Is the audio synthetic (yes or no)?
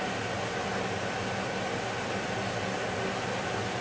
no